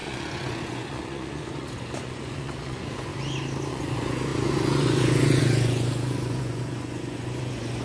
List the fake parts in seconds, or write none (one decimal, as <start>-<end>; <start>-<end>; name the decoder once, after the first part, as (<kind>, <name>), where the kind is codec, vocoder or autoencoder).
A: 0.0-3.1 (vocoder, Vocos); 3.7-7.8

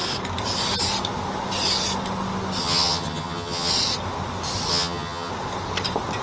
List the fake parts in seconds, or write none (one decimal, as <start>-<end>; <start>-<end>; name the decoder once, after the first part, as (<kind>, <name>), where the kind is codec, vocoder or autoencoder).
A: 2.6-3.7 (vocoder, HiFi-GAN); 4.7-5.3

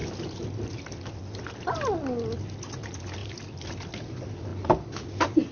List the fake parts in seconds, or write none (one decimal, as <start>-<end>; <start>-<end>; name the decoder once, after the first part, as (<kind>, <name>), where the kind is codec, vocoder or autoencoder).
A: none

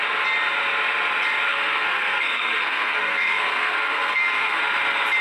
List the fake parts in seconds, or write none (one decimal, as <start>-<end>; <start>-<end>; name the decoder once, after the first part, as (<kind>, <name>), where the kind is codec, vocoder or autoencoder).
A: 1.5-4.6 (codec, SNAC)

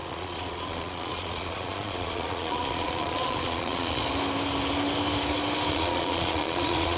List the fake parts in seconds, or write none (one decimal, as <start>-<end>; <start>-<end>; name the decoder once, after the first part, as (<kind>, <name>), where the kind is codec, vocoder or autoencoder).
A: 0.0-4.0 (vocoder, Vocos); 5.7-7.0

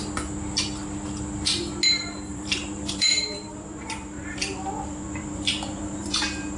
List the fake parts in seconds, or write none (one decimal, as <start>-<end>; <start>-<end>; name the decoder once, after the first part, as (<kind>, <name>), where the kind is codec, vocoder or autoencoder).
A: 2.3-6.6 (vocoder, BigVGAN v2)

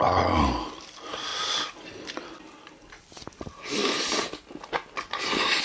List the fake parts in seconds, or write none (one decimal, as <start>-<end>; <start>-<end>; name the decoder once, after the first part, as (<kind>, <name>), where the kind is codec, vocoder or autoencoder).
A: 0.0-1.3 (vocoder, BigVGAN v2); 1.9-3.8

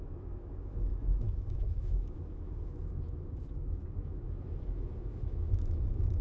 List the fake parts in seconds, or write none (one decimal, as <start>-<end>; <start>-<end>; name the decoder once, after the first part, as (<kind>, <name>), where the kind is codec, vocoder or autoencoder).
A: 0.0-6.2 (autoencoder, DAC-VAE)